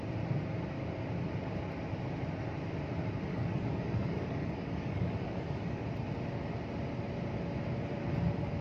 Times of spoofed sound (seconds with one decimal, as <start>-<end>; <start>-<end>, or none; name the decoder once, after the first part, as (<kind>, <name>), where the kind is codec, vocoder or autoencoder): 3.3-5.8 (codec, DAC)